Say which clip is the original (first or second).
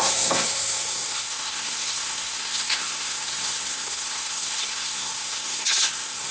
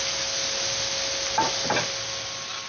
second